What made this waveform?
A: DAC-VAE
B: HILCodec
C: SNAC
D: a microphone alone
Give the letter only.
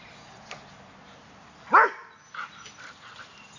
D